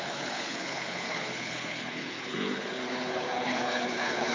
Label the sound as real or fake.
fake